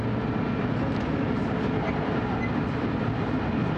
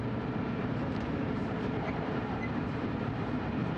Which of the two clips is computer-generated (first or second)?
second